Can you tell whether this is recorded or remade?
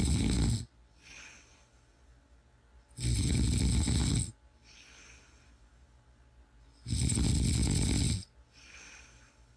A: recorded